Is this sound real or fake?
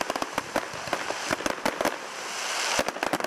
real